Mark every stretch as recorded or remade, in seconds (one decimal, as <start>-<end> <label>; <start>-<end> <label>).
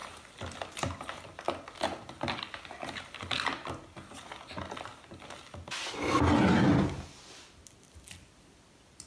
0.0-9.1 recorded